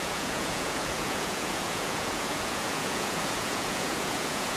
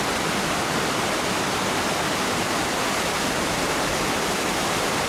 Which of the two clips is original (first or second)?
second